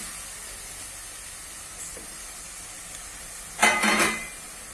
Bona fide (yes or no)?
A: yes